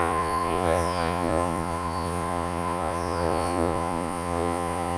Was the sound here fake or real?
fake